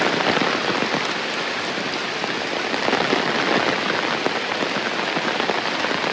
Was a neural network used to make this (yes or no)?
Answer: no